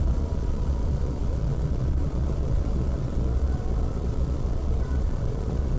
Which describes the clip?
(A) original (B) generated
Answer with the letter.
B